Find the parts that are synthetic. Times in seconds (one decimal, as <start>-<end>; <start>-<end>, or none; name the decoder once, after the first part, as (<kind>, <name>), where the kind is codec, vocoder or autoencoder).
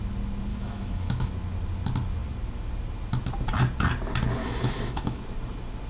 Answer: 0.5-1.3 (autoencoder, DAC-VAE); 4.4-5.2